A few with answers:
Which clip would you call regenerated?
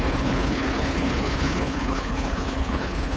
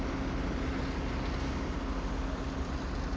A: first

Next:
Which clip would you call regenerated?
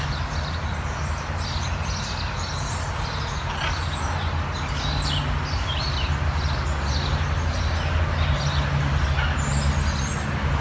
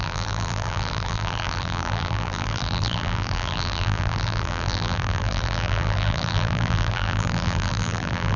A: second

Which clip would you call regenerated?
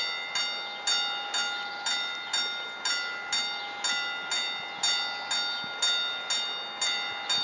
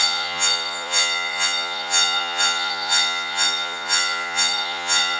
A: second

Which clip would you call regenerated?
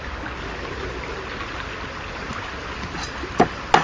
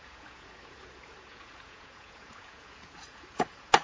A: second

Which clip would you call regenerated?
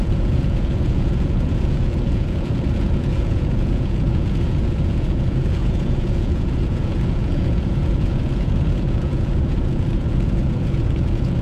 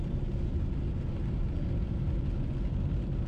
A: first